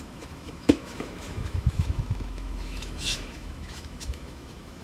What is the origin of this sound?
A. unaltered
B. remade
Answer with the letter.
B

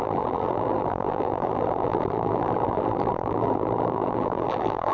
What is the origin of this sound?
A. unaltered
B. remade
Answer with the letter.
B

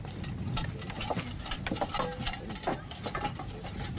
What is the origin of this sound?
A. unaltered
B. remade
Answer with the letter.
A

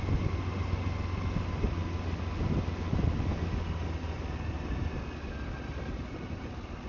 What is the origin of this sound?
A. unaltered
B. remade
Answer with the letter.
A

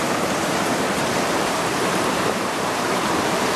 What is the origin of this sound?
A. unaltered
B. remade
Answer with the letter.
B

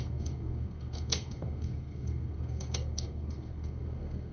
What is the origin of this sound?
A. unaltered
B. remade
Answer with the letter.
B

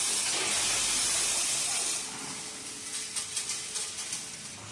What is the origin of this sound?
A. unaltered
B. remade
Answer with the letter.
A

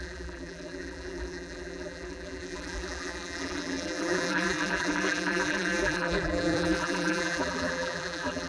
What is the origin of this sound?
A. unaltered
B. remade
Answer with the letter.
B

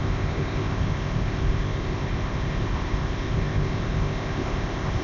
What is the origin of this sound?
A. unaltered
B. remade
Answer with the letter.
B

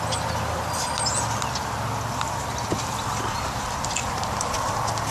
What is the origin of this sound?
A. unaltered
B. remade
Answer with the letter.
A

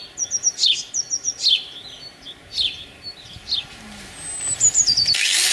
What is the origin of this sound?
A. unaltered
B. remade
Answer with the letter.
A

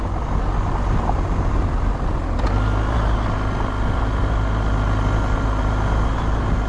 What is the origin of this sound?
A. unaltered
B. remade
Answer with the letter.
A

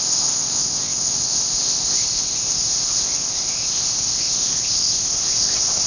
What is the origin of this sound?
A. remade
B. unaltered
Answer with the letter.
A